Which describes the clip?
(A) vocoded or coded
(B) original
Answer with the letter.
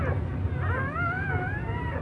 B